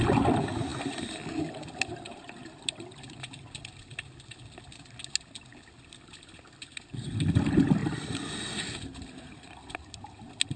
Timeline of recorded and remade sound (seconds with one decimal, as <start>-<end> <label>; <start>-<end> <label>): 0.0-7.8 recorded; 7.8-8.3 remade; 8.3-10.6 recorded